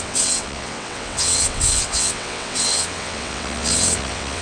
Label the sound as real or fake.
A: fake